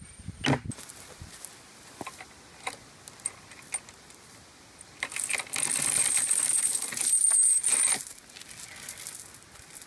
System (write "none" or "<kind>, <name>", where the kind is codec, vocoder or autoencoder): none